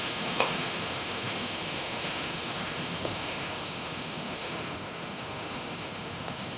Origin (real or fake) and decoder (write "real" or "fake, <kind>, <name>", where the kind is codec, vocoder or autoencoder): fake, autoencoder, DAC-VAE